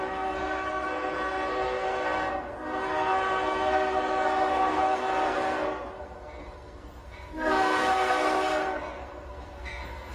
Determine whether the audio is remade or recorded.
remade